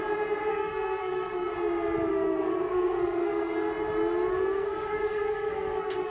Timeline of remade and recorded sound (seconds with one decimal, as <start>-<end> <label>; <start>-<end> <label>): 0.0-0.5 recorded; 0.5-1.5 remade; 1.5-2.1 recorded; 2.1-3.7 remade; 3.7-4.3 recorded; 4.3-6.1 remade